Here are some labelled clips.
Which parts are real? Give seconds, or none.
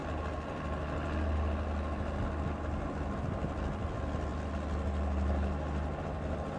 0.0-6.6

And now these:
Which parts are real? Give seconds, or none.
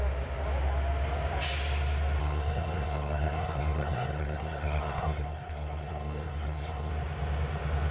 0.0-2.2; 6.9-7.9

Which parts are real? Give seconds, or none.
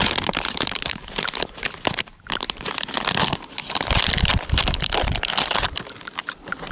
1.0-2.0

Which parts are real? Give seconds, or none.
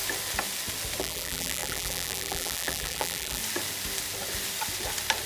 0.0-1.0; 3.4-5.3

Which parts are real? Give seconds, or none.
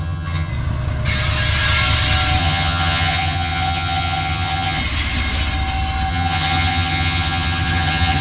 0.5-2.4; 4.8-6.1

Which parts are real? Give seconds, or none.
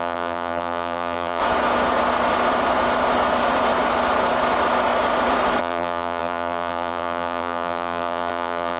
1.4-5.6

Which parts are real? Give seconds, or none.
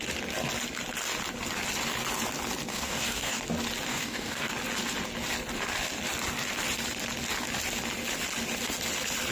0.0-2.7; 3.4-3.9; 4.5-9.3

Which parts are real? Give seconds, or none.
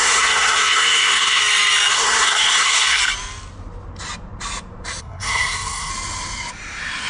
1.4-1.9; 3.0-5.0; 5.9-7.1